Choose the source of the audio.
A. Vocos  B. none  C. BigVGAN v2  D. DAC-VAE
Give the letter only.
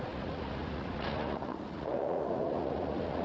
A